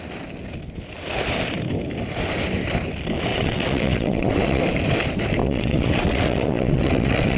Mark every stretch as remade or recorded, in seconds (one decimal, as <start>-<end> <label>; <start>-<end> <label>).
0.0-3.3 recorded; 3.3-4.6 remade; 4.6-5.4 recorded; 5.4-7.4 remade